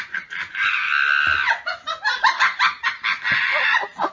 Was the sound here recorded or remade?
remade